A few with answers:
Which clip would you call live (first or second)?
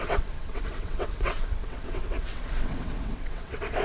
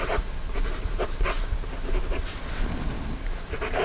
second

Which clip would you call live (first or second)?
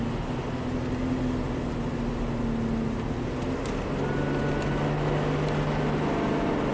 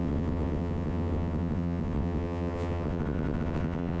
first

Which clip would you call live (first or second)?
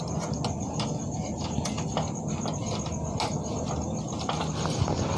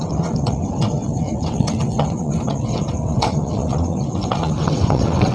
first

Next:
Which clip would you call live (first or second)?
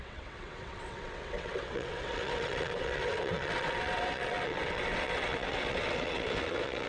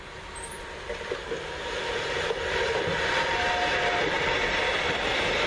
second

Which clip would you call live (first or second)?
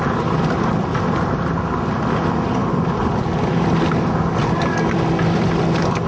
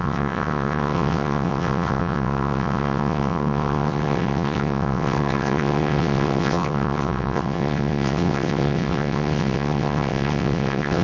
first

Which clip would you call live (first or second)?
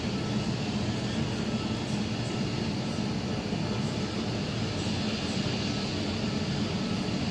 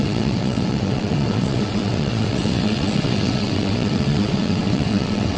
first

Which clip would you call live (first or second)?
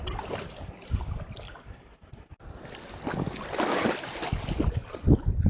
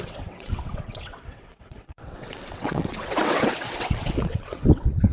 first